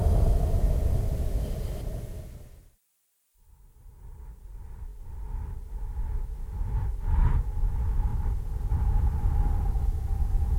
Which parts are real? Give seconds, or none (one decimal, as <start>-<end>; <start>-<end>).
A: 0.0-8.1; 8.7-10.6